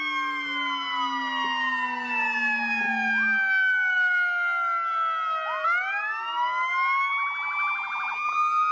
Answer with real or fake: real